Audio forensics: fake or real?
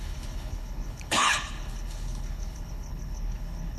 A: fake